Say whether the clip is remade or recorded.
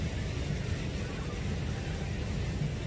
recorded